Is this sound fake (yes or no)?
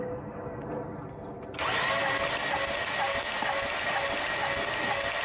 no